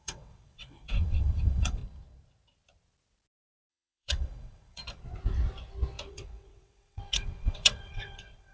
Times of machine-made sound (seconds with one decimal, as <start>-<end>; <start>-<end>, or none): 0.0-1.8; 3.7-4.8; 6.1-8.5